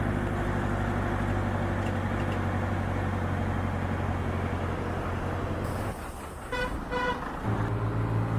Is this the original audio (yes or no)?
yes